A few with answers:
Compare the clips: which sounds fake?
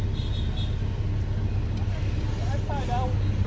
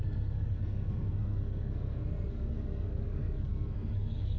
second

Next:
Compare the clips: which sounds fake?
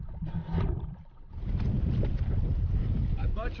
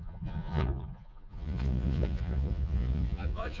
second